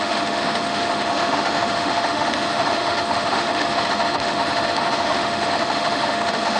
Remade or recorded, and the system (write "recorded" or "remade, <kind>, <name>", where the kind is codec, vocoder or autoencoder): remade, autoencoder, DAC-VAE